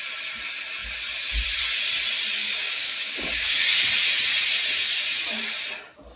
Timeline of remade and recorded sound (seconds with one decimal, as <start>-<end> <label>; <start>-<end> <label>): 0.0-2.4 recorded; 2.4-3.8 remade; 3.8-6.2 recorded